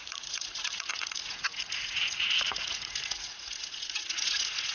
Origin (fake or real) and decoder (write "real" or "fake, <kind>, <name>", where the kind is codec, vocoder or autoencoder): fake, vocoder, Vocos